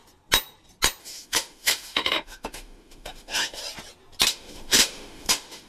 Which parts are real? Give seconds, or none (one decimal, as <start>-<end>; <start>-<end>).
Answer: 0.0-1.0; 3.6-4.3